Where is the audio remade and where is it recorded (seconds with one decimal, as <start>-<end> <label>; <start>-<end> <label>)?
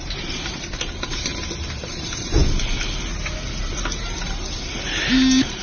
0.0-1.3 remade; 1.3-1.9 recorded; 1.9-2.4 remade; 2.4-3.6 recorded; 3.6-5.6 remade